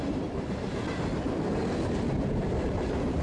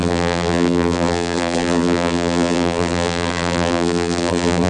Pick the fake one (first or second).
second